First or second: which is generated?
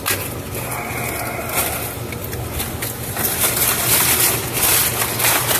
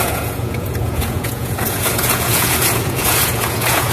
second